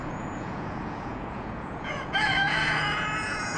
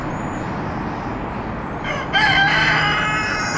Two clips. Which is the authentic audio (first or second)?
second